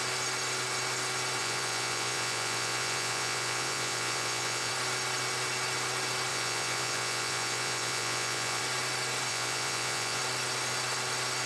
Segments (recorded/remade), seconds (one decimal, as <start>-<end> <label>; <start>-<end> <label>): 0.0-1.4 recorded; 1.4-4.7 remade; 4.7-6.3 recorded; 6.3-8.6 remade; 8.6-9.3 recorded; 9.3-10.2 remade; 10.2-11.5 recorded